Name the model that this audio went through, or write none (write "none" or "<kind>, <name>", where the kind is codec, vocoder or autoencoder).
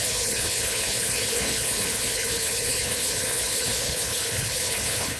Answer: codec, HILCodec